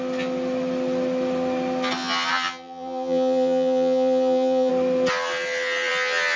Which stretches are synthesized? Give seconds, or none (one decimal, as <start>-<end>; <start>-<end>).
2.3-4.7

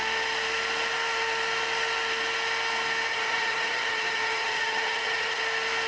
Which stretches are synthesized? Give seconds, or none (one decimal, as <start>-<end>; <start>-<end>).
3.1-5.4

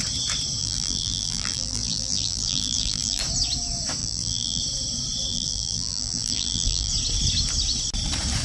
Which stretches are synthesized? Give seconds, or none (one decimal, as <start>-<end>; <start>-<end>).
0.6-3.2; 4.0-4.6; 5.3-6.9

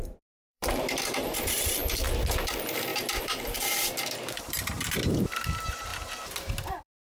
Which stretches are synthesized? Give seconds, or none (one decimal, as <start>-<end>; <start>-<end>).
0.0-7.0

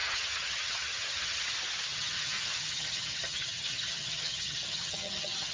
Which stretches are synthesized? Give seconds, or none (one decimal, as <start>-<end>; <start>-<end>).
0.0-1.4; 1.9-5.5

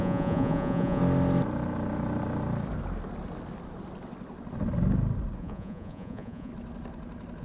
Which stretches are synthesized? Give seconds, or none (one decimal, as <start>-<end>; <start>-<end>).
0.0-1.0; 5.4-6.5

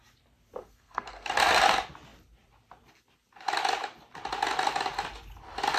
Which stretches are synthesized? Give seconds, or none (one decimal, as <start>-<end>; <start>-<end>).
0.6-1.3